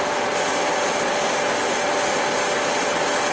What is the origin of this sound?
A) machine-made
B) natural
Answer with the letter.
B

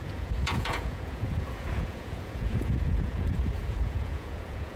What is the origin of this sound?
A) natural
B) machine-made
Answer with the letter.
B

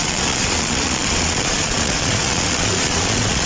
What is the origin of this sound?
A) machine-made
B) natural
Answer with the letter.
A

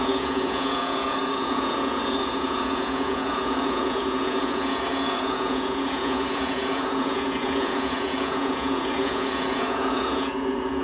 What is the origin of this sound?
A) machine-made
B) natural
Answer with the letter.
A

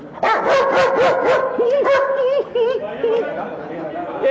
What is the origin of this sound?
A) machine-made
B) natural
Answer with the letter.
B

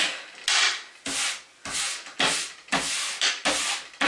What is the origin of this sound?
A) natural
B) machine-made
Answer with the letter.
A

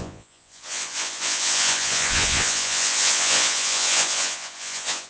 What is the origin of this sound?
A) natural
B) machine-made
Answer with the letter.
B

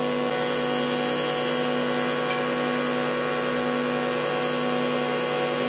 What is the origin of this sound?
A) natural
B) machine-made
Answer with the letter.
A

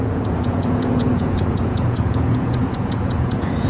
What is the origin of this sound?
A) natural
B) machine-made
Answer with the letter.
B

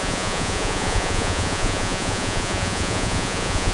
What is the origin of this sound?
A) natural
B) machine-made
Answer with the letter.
B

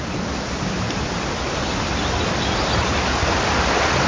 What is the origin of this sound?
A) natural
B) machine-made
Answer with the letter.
A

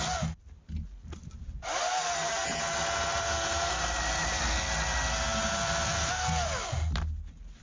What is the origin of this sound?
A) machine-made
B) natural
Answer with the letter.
B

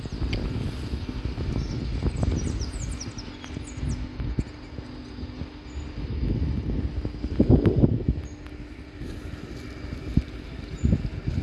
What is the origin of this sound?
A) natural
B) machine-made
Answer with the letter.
A